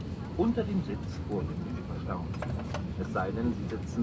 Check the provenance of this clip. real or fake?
real